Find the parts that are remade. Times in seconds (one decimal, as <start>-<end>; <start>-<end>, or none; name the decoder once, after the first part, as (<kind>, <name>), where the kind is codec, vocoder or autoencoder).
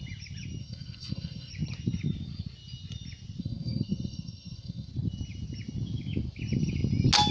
0.6-1.5 (codec, SNAC); 3.4-4.9